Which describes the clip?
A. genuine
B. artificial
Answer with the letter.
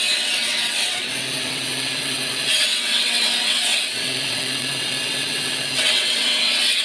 B